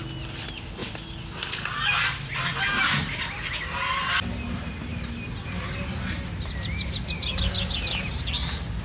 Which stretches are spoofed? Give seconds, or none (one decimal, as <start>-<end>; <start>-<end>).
none